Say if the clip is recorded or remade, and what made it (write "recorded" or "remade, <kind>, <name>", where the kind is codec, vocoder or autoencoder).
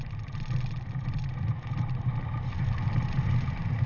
remade, vocoder, BigVGAN v2